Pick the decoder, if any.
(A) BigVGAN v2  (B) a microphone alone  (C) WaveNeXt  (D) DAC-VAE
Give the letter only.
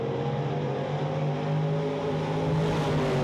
B